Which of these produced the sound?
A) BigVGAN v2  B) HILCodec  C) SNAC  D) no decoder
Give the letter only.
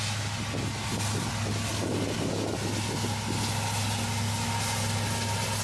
D